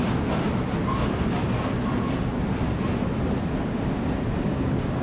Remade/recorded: recorded